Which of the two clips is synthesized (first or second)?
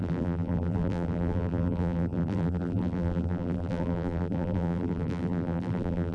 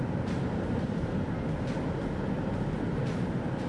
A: first